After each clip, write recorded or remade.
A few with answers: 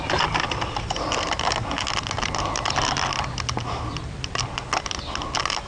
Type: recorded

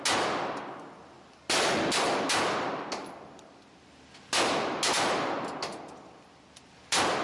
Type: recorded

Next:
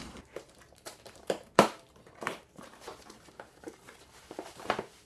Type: remade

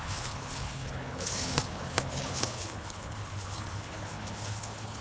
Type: remade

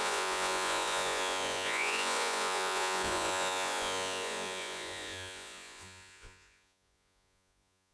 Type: remade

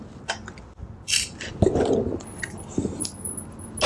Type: recorded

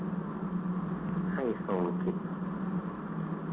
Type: recorded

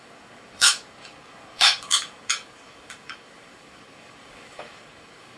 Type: remade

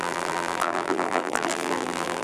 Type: remade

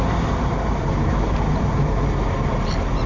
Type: remade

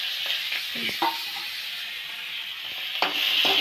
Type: recorded